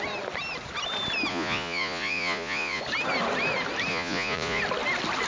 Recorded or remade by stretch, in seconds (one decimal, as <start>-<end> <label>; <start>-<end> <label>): 0.0-1.3 recorded; 1.3-2.8 remade; 2.8-3.9 recorded; 3.9-4.6 remade; 4.6-5.3 recorded